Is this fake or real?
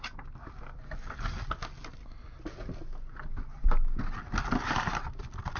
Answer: real